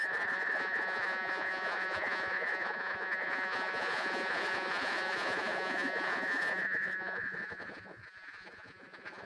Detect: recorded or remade remade